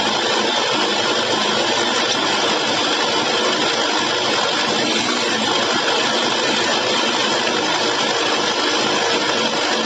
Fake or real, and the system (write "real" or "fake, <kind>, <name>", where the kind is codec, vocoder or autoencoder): real